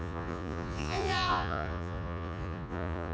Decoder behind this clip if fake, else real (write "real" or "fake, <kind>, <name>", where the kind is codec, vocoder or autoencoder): fake, vocoder, Vocos